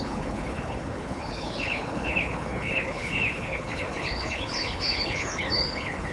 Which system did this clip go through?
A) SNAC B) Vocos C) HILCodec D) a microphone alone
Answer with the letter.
C